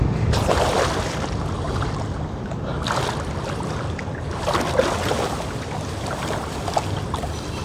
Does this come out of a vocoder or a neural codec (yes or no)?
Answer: no